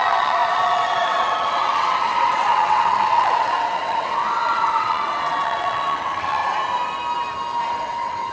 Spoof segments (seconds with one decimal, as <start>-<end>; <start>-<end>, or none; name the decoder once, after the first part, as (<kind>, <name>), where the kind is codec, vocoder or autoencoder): 0.0-6.4 (vocoder, WaveNeXt); 7.6-8.3

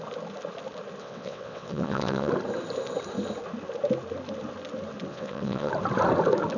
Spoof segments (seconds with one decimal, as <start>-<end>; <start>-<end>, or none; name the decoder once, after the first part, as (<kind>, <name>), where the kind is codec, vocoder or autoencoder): 1.0-2.3 (vocoder, WaveNeXt); 5.1-5.7

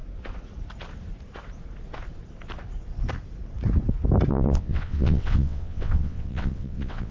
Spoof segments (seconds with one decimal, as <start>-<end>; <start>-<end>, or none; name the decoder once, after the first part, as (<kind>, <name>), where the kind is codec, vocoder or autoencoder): 4.3-7.1 (vocoder, WaveNeXt)

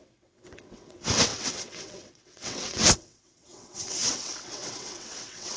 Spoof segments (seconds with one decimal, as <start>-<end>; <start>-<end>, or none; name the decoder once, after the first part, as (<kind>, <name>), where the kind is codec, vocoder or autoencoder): 0.0-5.6 (vocoder, WaveNeXt)

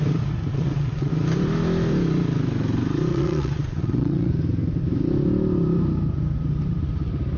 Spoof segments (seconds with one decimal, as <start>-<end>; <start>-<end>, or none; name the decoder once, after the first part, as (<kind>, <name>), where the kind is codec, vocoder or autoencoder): 0.5-1.1 (vocoder, WaveNeXt); 3.1-4.3

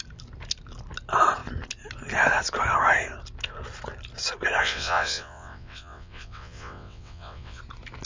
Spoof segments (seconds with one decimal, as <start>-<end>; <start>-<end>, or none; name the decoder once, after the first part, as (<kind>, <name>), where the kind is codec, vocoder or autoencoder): 4.6-7.6 (vocoder, WaveNeXt)

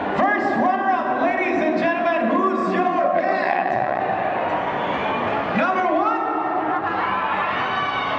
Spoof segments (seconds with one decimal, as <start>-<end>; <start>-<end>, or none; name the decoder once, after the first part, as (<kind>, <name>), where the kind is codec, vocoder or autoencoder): 2.6-4.0 (vocoder, WaveNeXt)